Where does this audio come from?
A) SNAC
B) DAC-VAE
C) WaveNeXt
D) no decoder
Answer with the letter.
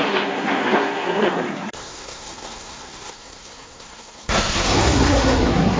A